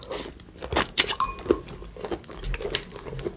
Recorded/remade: recorded